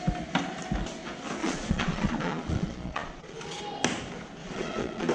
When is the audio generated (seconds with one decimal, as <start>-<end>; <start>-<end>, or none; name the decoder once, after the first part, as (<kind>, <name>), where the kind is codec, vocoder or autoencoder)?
1.4-3.6 (vocoder, Vocos); 4.4-5.1

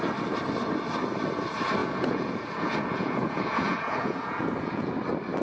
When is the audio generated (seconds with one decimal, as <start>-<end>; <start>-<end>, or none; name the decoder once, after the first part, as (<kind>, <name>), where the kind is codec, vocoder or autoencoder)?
1.8-4.9 (vocoder, Vocos)

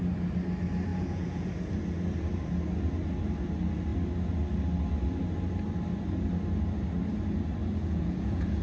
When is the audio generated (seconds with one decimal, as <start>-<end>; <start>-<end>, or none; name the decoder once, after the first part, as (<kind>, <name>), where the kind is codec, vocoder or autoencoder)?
0.9-1.5 (vocoder, Vocos); 7.6-8.6